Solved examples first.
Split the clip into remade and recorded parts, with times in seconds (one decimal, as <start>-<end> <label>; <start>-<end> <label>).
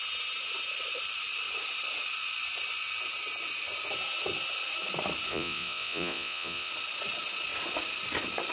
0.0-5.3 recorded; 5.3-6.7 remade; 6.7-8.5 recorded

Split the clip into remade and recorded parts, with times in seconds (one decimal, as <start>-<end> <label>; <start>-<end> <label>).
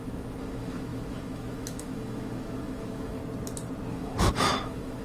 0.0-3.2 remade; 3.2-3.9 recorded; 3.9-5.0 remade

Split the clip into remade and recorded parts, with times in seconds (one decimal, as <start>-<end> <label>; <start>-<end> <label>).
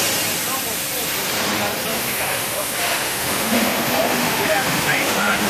0.0-1.9 recorded; 1.9-5.5 remade